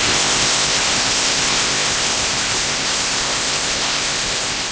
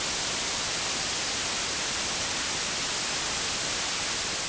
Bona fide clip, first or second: second